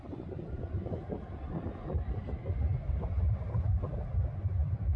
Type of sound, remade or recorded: recorded